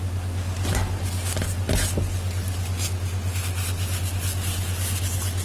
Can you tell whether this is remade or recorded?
recorded